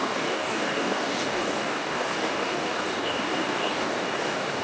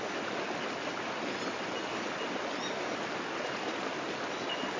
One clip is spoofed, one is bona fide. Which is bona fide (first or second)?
second